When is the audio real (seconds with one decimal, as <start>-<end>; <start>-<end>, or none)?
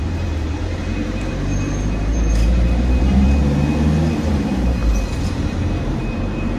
3.4-4.3; 4.8-5.3